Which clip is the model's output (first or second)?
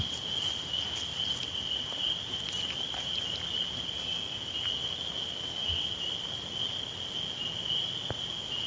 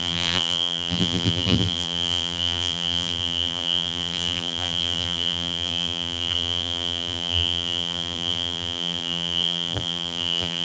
second